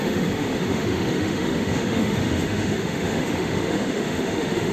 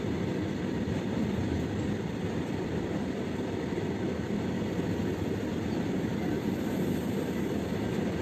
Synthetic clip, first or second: first